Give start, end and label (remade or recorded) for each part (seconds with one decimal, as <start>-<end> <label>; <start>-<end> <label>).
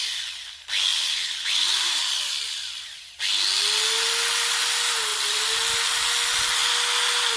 0.0-0.9 recorded; 0.9-3.2 remade; 3.2-5.1 recorded; 5.1-5.8 remade; 5.8-7.4 recorded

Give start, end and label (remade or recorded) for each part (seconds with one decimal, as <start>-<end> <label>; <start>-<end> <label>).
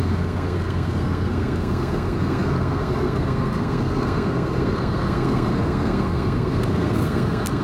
0.0-7.6 remade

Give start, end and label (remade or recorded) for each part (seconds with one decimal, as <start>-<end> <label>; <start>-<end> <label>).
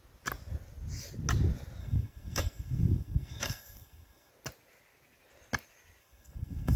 0.0-1.8 recorded; 1.8-4.3 remade; 4.3-6.0 recorded; 6.0-6.8 remade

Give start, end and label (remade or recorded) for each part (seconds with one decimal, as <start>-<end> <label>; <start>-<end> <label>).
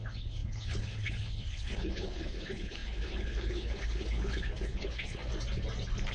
0.0-5.2 remade; 5.2-6.1 recorded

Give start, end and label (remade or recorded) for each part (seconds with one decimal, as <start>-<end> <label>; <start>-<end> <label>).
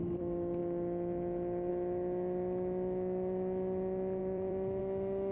0.0-4.2 recorded; 4.2-4.8 remade; 4.8-5.3 recorded